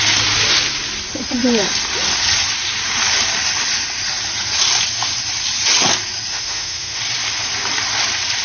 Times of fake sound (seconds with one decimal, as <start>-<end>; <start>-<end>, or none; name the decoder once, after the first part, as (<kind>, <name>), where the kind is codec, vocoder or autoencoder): 6.3-7.0 (autoencoder, DAC-VAE)